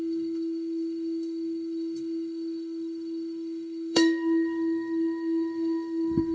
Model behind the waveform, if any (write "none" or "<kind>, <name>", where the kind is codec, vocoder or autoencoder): codec, SNAC